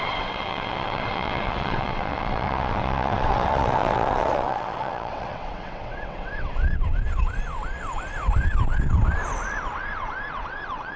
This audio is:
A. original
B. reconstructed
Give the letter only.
B